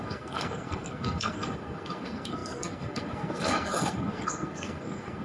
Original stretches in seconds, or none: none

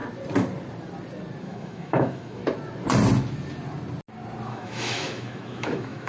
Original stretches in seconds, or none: 0.0-1.4; 2.4-4.5

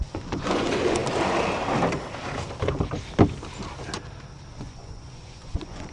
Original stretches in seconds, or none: 1.0-4.5